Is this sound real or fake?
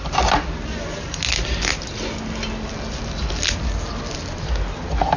real